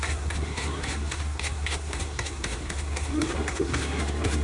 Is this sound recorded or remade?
remade